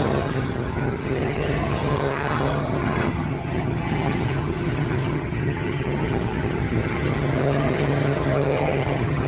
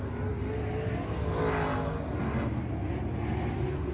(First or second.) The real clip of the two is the second